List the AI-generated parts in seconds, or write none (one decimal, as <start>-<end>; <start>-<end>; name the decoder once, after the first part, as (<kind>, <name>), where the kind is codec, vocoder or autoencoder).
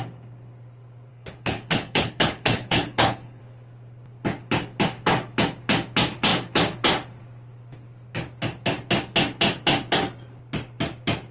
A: 1.1-3.4 (codec, HILCodec)